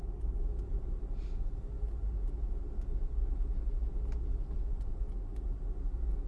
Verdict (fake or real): real